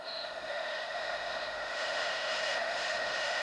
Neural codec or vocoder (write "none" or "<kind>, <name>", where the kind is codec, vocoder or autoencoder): autoencoder, DAC-VAE